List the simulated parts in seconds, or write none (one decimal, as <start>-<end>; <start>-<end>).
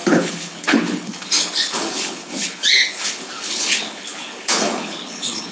0.0-5.5